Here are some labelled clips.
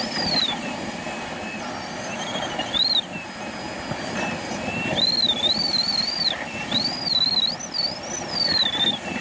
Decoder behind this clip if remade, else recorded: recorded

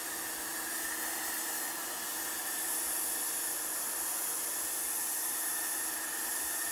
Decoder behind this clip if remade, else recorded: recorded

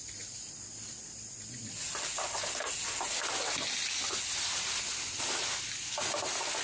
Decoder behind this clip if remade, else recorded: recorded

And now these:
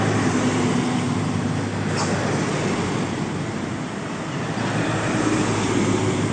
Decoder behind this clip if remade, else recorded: recorded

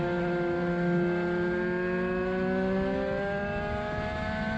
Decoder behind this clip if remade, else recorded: recorded